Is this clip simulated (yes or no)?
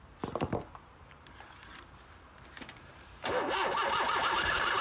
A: yes